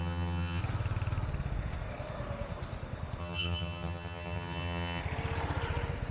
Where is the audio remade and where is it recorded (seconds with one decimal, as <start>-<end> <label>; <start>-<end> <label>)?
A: 0.0-0.6 remade; 0.6-3.2 recorded; 3.2-5.0 remade; 5.0-6.1 recorded